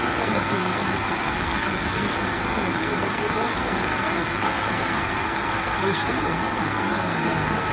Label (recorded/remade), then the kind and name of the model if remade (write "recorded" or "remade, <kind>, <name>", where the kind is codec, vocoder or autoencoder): remade, codec, SNAC